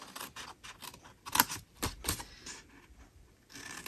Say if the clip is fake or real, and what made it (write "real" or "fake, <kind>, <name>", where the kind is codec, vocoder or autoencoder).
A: real